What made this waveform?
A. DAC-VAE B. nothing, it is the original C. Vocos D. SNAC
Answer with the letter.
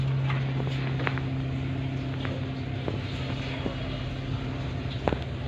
B